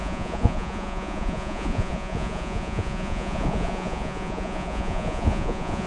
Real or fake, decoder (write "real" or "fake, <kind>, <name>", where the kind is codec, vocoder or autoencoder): fake, vocoder, Vocos